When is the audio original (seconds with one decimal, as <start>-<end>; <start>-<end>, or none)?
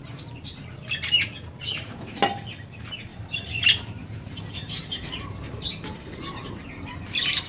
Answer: 0.0-3.1